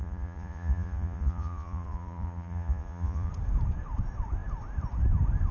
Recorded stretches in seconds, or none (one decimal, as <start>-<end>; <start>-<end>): 3.3-5.5